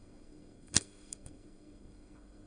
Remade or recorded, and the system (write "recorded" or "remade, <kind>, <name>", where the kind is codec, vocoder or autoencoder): remade, codec, SNAC